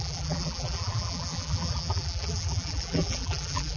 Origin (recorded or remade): remade